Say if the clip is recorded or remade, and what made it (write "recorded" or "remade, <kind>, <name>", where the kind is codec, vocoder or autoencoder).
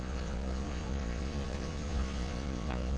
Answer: remade, vocoder, Vocos